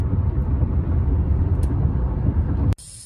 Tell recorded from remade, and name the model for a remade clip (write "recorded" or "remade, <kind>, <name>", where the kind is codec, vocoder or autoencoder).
recorded